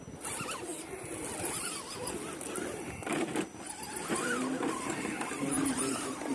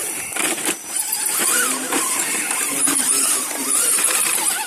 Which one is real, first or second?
first